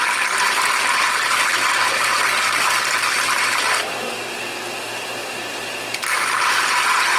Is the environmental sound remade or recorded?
recorded